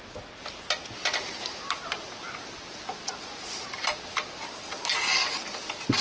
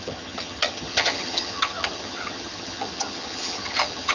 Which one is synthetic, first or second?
second